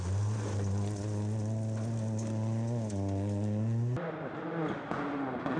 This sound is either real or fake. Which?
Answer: real